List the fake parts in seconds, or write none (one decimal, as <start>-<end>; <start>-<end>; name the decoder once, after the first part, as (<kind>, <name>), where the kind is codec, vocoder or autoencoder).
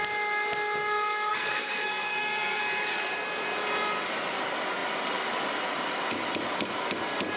1.3-2.6 (codec, SNAC)